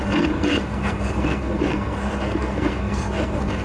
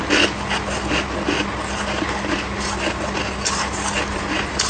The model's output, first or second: first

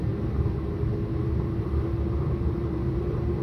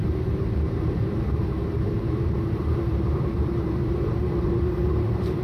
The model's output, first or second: second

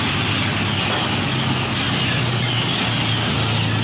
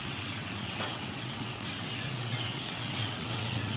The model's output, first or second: second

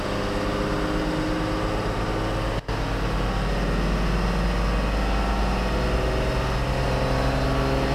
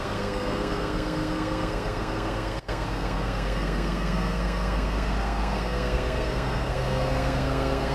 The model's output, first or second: second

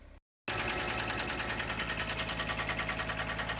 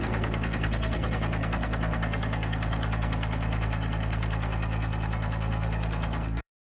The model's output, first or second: second